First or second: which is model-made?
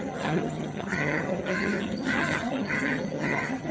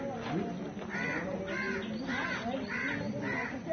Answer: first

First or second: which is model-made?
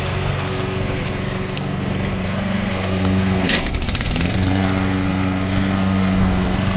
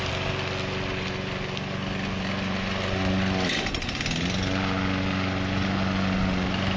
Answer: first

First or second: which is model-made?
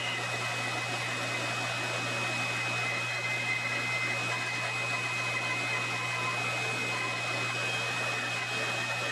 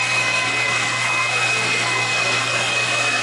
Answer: second